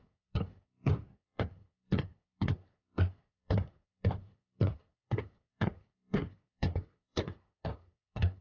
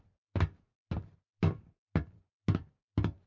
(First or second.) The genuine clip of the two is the second